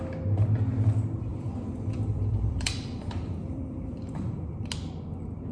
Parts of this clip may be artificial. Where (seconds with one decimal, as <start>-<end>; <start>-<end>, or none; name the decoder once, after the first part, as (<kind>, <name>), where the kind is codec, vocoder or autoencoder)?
1.3-4.5 (vocoder, BigVGAN v2)